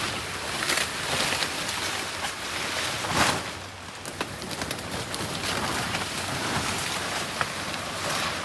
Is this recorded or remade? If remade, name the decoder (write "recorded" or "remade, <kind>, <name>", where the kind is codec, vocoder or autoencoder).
recorded